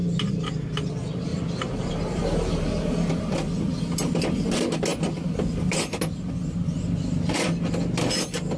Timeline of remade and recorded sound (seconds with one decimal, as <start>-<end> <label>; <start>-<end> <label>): 0.0-1.3 recorded; 1.3-3.1 remade; 3.1-8.6 recorded